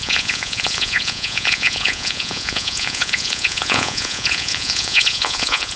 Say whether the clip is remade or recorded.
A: remade